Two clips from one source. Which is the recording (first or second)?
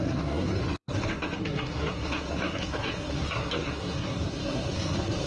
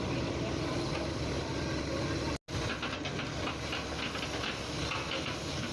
second